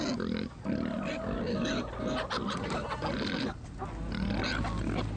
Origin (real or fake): real